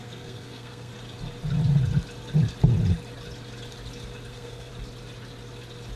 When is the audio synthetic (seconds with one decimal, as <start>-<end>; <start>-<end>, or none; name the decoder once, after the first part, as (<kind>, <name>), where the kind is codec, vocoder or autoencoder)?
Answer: 0.0-0.9 (codec, SNAC); 4.3-4.7